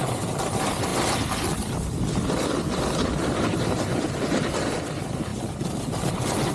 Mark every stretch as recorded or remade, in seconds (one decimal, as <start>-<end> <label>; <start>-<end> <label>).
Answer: 0.0-6.5 recorded